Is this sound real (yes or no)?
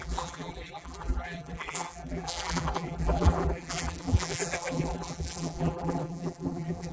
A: no